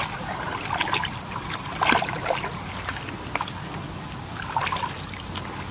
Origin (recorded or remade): recorded